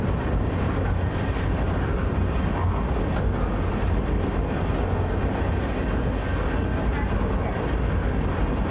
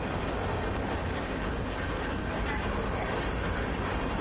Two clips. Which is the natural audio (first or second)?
first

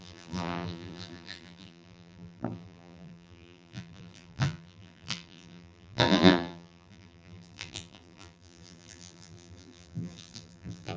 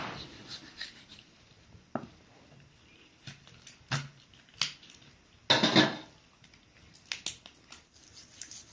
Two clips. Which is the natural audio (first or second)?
second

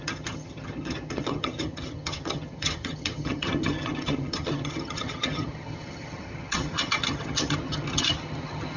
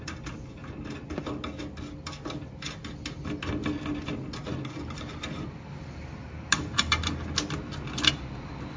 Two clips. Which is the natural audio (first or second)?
second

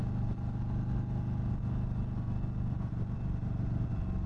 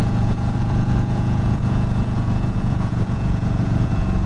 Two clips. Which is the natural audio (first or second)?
first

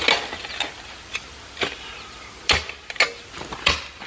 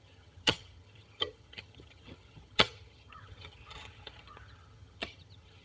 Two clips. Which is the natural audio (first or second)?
first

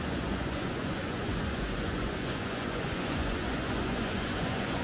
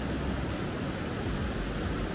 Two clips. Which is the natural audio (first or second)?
second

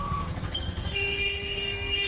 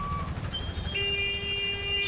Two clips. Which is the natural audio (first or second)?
second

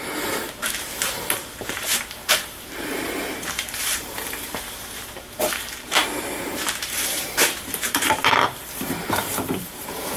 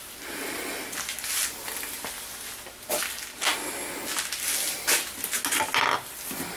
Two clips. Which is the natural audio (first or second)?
second